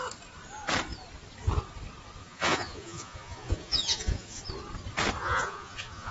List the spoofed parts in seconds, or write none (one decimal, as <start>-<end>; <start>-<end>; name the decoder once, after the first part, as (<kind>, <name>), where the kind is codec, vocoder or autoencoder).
2.2-4.4 (vocoder, Vocos); 5.2-6.1